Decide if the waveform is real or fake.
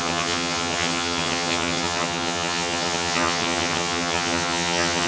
fake